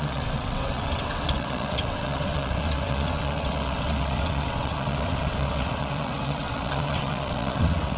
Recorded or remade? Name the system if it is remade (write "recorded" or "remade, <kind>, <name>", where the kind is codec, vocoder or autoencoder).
remade, vocoder, WaveNeXt